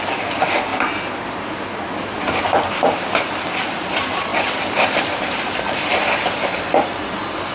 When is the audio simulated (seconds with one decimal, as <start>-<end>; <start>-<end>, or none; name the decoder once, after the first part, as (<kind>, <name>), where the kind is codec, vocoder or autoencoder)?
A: 0.7-2.1 (vocoder, BigVGAN v2); 4.3-6.8